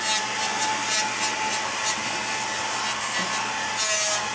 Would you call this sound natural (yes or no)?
yes